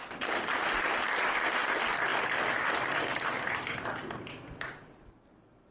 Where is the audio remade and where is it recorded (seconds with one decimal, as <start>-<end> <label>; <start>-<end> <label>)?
0.0-1.6 recorded; 1.6-5.7 remade